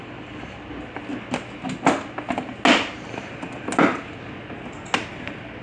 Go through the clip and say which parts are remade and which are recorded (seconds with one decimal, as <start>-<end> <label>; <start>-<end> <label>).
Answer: 0.0-5.6 recorded

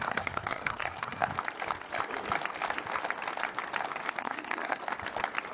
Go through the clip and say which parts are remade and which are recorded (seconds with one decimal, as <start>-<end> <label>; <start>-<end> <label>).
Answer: 0.0-1.3 remade; 1.3-4.2 recorded; 4.2-4.8 remade; 4.8-5.5 recorded

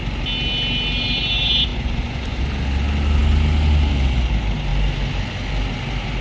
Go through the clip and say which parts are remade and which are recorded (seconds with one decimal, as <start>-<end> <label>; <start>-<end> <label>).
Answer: 0.0-1.7 recorded; 1.7-2.4 remade; 2.4-6.2 recorded

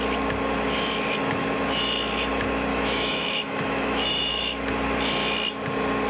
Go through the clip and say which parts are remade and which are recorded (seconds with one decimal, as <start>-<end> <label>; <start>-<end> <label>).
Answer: 0.0-2.7 recorded; 2.7-4.7 remade; 4.7-6.1 recorded